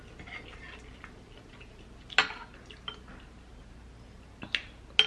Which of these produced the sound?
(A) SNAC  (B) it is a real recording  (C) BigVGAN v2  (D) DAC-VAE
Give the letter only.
B